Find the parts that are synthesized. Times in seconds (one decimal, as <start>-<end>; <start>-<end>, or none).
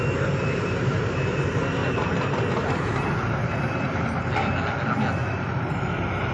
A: 1.8-4.2; 5.2-6.3